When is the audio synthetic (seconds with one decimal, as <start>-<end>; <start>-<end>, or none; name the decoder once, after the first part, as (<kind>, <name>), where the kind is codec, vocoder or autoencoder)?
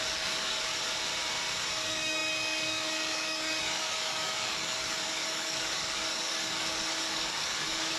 0.0-0.7 (codec, DAC); 1.8-8.0